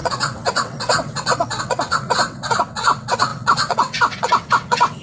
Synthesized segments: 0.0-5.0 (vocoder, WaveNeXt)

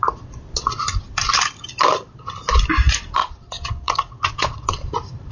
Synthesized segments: 0.0-0.8 (vocoder, Vocos); 3.2-4.7

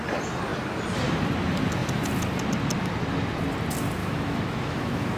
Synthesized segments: 4.0-5.2 (autoencoder, DAC-VAE)

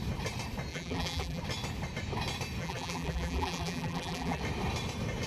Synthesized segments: 0.7-1.4 (vocoder, BigVGAN v2); 2.6-4.4

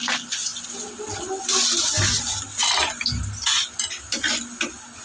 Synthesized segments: none

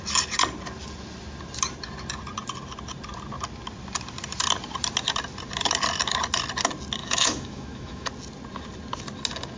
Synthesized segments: 7.0-8.1 (autoencoder, DAC-VAE)

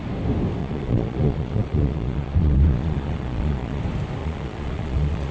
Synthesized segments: 0.6-3.8 (vocoder, Vocos); 4.2-5.3

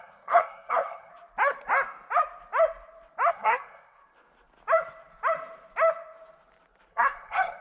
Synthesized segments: 0.0-1.1 (codec, SNAC); 3.3-4.0; 6.9-7.6